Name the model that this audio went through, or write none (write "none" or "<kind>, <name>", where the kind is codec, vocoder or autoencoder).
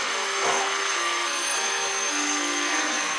codec, SNAC